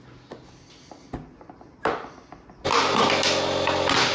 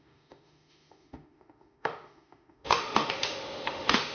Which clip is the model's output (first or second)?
second